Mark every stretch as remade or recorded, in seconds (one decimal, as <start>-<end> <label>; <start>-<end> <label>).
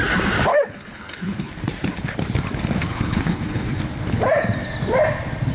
0.0-0.5 recorded; 0.5-1.5 remade; 1.5-2.9 recorded; 2.9-3.8 remade; 3.8-5.5 recorded